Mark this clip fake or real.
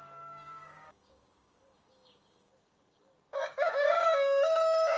fake